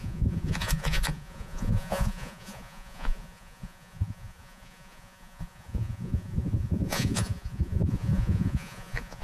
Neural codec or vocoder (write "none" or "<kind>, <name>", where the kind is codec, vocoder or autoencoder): vocoder, Vocos